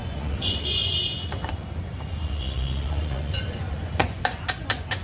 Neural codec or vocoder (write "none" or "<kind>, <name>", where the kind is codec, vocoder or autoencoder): vocoder, Vocos